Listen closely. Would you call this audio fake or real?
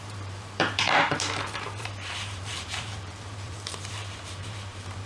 fake